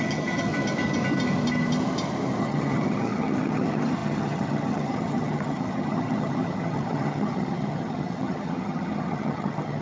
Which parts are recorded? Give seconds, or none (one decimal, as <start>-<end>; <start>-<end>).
0.5-2.4